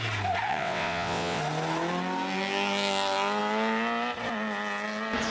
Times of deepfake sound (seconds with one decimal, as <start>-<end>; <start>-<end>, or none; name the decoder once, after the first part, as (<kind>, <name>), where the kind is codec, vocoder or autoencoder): 0.5-1.4 (vocoder, WaveNeXt)